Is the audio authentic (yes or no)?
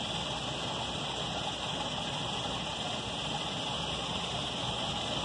yes